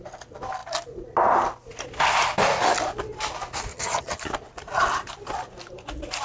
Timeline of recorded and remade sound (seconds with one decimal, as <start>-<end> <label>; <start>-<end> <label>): 0.0-3.7 recorded; 3.7-4.2 remade; 4.2-6.2 recorded